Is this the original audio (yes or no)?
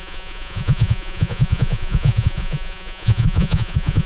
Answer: no